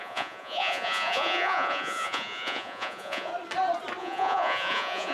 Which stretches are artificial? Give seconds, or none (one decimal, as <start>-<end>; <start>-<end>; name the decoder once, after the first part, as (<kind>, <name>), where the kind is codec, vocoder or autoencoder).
0.0-3.3 (vocoder, Vocos); 4.0-5.1